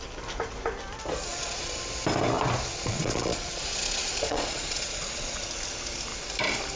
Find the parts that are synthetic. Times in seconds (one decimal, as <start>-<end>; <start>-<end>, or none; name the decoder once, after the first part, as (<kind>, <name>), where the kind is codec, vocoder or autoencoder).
1.3-1.8 (vocoder, Vocos); 2.7-5.4